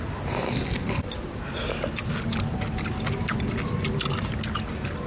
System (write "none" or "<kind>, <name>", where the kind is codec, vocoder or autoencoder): none